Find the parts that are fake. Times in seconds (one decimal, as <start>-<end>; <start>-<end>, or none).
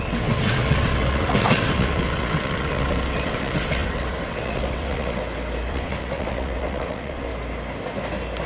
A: 0.0-5.2; 5.7-7.3